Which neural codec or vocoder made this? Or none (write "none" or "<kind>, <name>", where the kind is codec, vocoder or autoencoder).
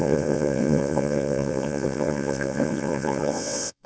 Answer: vocoder, WaveNeXt